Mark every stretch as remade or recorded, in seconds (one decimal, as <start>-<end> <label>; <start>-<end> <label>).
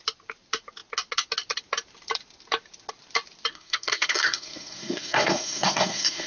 0.0-3.5 recorded; 3.5-6.3 remade